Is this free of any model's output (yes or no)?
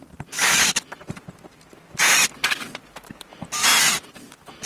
yes